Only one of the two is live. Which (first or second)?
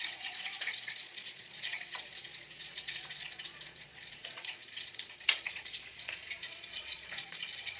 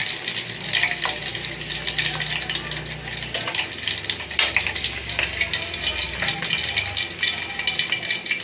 second